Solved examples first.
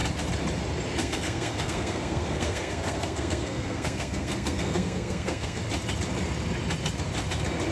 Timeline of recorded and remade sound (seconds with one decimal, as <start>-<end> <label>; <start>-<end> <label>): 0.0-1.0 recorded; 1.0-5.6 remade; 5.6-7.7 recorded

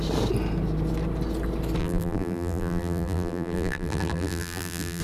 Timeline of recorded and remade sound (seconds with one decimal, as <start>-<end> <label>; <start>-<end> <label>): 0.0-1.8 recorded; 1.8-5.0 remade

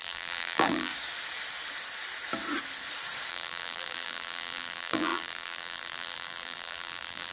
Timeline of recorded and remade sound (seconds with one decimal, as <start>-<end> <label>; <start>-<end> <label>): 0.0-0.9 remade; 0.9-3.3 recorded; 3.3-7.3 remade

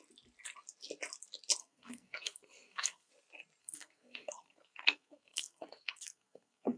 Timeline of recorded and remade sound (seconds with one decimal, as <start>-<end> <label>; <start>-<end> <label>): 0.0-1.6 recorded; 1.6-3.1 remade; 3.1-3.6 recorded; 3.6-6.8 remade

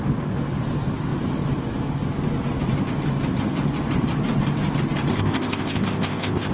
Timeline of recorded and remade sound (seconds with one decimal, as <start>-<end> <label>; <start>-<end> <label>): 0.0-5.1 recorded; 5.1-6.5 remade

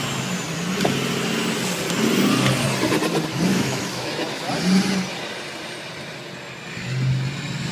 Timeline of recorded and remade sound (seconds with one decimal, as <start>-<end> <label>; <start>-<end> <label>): 0.0-3.5 recorded; 3.5-4.1 remade; 4.1-7.7 recorded

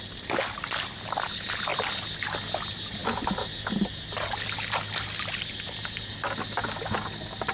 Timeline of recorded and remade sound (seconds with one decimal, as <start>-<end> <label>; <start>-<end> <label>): 0.0-7.5 recorded

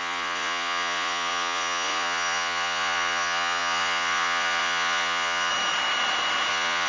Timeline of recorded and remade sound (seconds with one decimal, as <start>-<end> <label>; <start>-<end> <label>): 0.0-5.5 remade; 5.5-6.5 recorded; 6.5-6.9 remade